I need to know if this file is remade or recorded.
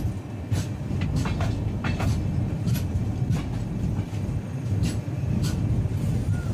recorded